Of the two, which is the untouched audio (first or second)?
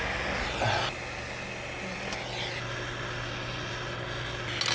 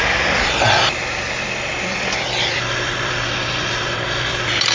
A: first